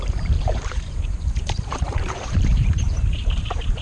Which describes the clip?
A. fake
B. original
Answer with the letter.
A